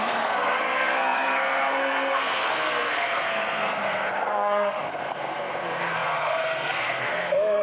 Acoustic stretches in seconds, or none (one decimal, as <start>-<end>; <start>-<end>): none